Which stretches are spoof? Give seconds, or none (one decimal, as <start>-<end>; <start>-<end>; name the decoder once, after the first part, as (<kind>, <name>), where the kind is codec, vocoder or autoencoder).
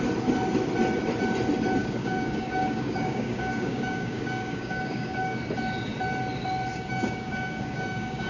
1.8-5.4 (codec, DAC); 6.7-8.3